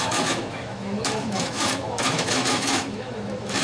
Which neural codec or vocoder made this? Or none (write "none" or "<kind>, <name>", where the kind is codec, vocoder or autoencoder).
autoencoder, DAC-VAE